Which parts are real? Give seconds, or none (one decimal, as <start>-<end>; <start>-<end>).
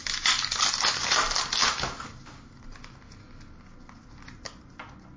0.0-5.2